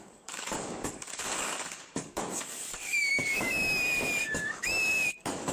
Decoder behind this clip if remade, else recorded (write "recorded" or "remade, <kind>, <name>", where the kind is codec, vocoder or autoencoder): remade, codec, DAC